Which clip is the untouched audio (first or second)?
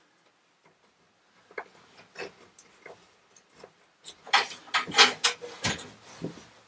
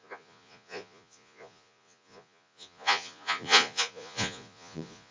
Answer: first